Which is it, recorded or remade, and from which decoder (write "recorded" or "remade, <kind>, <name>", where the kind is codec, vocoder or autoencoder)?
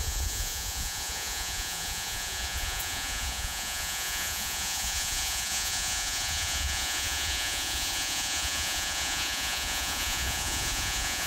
remade, vocoder, Vocos